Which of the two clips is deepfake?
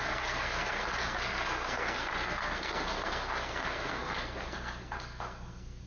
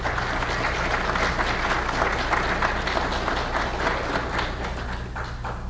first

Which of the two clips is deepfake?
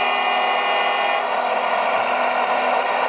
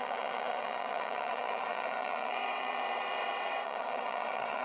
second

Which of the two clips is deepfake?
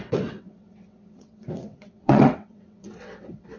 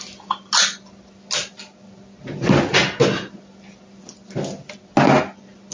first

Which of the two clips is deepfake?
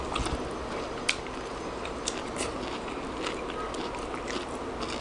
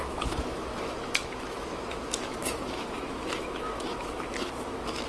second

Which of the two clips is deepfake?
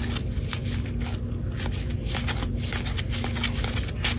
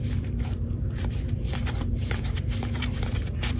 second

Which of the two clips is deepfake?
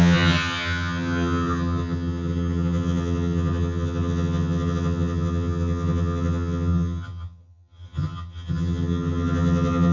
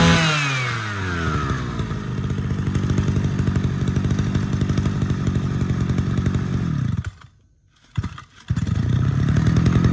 first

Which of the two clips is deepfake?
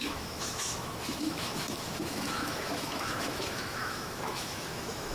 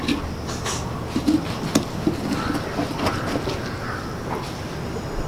first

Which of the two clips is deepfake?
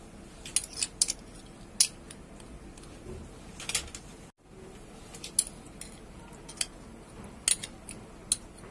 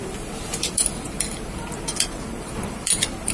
second